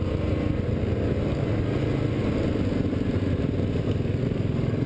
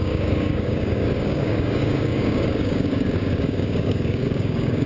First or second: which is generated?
second